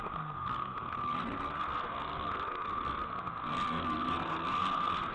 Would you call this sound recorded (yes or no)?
no